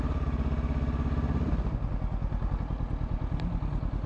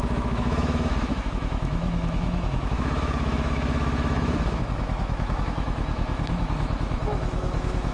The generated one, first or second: second